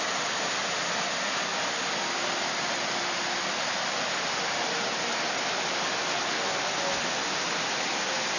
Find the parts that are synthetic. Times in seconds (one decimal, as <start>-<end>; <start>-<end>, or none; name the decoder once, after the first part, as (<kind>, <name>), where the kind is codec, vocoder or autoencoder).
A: none